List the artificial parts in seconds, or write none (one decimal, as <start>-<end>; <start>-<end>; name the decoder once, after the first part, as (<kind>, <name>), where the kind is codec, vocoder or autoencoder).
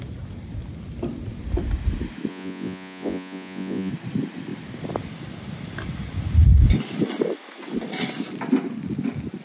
2.3-3.9 (vocoder, Vocos)